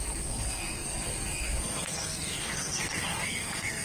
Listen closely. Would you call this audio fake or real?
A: fake